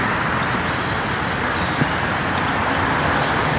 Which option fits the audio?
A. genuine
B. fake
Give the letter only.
A